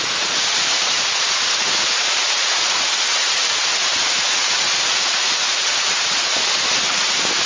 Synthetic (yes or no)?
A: yes